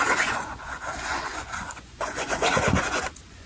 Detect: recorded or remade remade